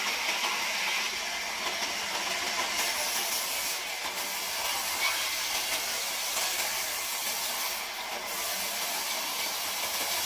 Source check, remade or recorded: recorded